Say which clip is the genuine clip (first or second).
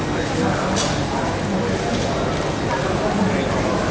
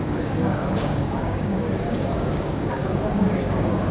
first